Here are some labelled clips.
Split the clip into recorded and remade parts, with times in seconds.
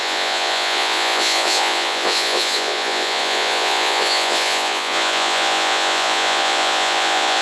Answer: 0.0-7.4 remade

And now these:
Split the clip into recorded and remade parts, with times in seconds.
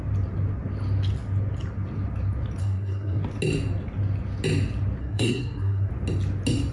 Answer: 0.0-2.6 recorded; 2.6-3.2 remade; 3.2-5.0 recorded; 5.0-5.9 remade; 5.9-6.7 recorded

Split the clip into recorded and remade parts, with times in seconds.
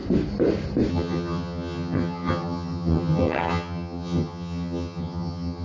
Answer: 0.0-0.9 recorded; 0.9-5.6 remade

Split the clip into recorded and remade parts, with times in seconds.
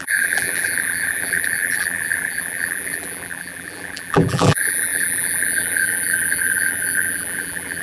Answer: 0.0-7.8 remade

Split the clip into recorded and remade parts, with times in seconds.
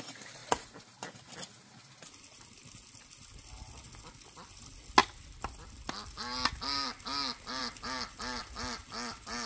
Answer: 0.0-9.5 recorded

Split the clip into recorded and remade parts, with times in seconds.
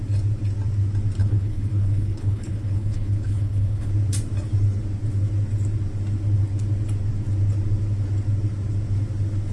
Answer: 0.0-1.2 recorded; 1.2-3.9 remade; 3.9-9.5 recorded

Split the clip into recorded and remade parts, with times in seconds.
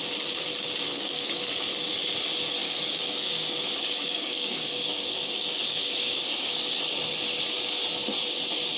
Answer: 0.0-0.9 recorded; 0.9-1.5 remade; 1.5-2.6 recorded; 2.6-6.8 remade; 6.8-8.8 recorded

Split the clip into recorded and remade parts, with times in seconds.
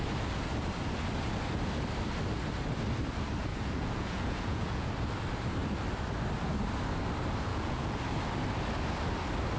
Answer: 0.0-3.5 recorded; 3.5-4.9 remade; 4.9-7.5 recorded; 7.5-8.0 remade; 8.0-9.6 recorded